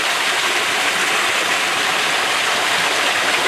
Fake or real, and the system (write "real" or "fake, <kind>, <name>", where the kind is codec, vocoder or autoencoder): real